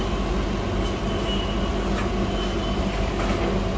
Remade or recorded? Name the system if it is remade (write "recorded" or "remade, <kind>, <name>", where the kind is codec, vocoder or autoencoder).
recorded